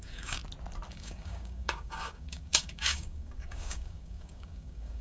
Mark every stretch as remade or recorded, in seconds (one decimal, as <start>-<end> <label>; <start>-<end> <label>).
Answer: 0.0-0.4 remade; 0.4-0.9 recorded; 0.9-5.0 remade

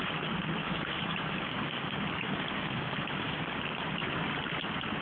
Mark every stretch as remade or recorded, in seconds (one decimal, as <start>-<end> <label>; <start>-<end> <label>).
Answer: 0.0-0.6 recorded; 0.6-3.6 remade; 3.6-5.0 recorded